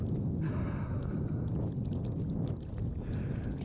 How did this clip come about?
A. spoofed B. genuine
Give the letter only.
B